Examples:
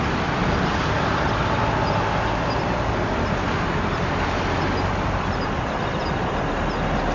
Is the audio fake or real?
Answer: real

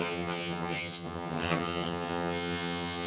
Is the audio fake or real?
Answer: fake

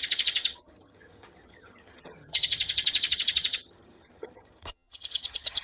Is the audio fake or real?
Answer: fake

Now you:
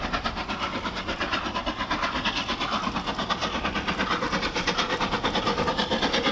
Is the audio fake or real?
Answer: real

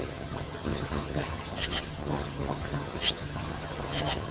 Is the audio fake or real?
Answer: fake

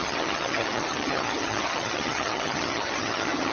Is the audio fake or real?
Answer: fake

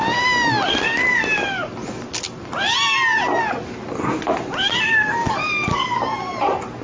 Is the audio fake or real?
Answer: real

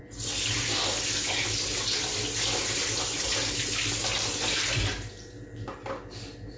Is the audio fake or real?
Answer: real